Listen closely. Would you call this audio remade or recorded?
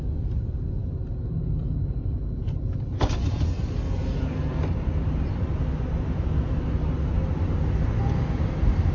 recorded